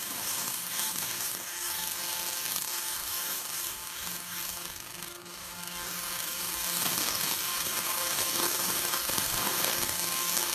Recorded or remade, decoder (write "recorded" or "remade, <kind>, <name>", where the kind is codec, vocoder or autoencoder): remade, codec, DAC